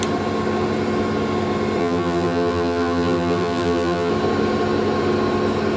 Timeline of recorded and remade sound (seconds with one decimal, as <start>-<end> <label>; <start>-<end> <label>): 0.0-1.8 recorded; 1.8-4.1 remade; 4.1-5.8 recorded